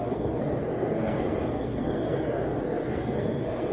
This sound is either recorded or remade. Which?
remade